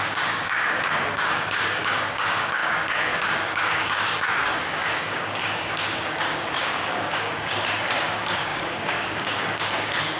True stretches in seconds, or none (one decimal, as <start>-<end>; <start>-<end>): none